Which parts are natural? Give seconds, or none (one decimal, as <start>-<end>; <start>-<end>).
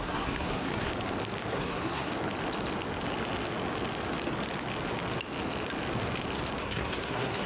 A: 0.9-1.5; 2.1-6.6